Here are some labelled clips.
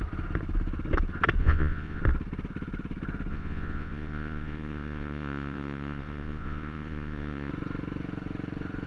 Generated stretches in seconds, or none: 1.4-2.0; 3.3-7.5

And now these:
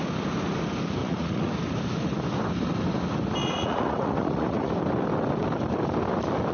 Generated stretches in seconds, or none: 1.0-1.5; 3.4-4.7

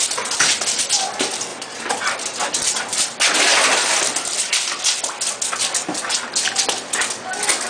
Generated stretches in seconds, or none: 1.5-2.0

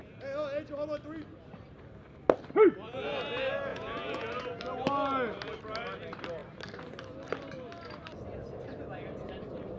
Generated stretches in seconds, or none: 3.7-4.3